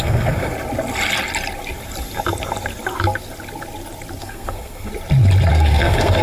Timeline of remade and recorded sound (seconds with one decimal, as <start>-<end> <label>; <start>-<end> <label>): 0.0-0.5 remade; 0.5-4.2 recorded; 4.2-4.9 remade; 4.9-5.5 recorded; 5.5-6.2 remade